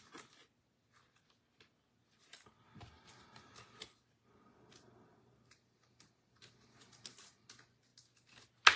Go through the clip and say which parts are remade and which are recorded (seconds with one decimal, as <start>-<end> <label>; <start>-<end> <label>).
0.0-8.8 recorded